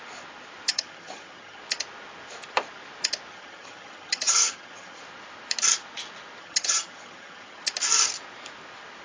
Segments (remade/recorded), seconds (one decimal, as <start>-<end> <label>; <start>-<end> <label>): 0.0-0.7 recorded; 0.7-1.6 remade; 1.6-3.3 recorded; 3.3-5.0 remade; 5.0-6.4 recorded; 6.4-7.6 remade; 7.6-9.0 recorded